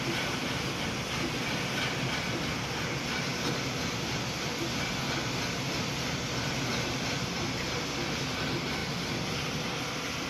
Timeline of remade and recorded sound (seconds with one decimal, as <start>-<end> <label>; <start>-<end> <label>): 0.0-10.3 recorded